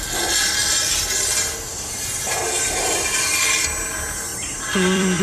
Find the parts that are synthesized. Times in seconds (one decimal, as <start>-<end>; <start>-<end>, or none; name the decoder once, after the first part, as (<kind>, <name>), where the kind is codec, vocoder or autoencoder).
1.7-3.3 (vocoder, BigVGAN v2); 4.3-5.2